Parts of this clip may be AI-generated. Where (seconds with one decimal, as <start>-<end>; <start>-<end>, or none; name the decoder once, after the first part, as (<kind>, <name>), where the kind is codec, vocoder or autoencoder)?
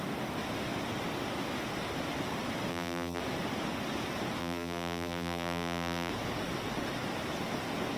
2.7-3.2 (vocoder, BigVGAN v2); 4.4-6.1